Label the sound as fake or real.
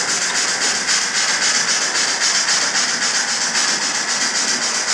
real